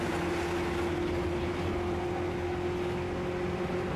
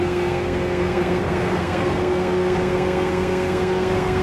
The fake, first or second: second